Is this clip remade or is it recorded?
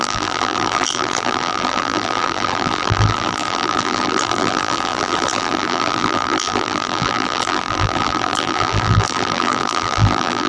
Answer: remade